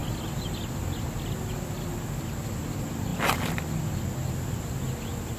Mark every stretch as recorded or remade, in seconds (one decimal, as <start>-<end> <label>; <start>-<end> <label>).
0.0-5.4 recorded